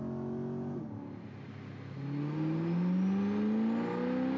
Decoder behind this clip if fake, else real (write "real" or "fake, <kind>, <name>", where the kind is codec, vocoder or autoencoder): real